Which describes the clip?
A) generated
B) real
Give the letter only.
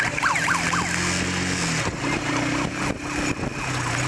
B